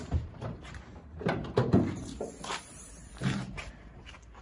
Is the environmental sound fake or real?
fake